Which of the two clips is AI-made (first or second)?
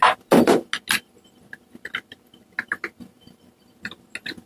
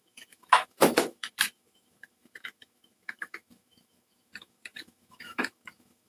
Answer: second